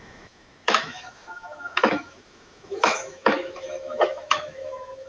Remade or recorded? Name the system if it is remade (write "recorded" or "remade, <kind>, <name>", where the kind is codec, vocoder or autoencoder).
remade, autoencoder, DAC-VAE